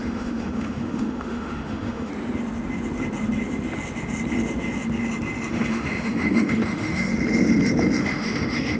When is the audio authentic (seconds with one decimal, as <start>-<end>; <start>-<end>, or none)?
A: 2.1-5.5; 7.1-8.0